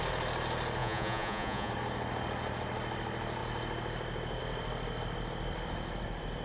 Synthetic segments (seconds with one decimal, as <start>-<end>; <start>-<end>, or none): 0.8-1.7